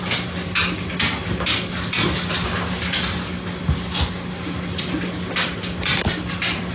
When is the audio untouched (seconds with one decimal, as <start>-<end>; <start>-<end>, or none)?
0.0-6.7